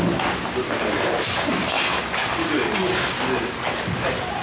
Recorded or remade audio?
recorded